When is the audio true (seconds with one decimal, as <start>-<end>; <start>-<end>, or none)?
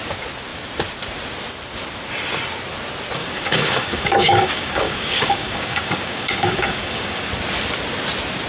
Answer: 0.0-3.2; 7.3-8.5